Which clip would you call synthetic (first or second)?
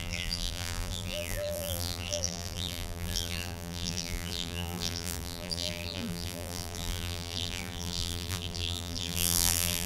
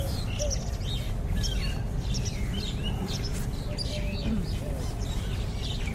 first